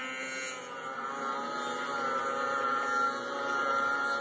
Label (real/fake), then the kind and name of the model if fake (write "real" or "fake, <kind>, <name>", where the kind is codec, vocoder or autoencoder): real